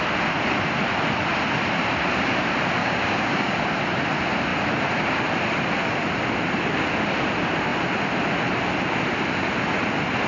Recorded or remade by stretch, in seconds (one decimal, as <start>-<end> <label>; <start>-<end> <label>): 0.0-2.8 recorded; 2.8-3.6 remade; 3.6-10.3 recorded